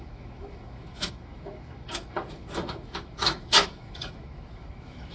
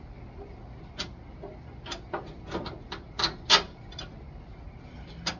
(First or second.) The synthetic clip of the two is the first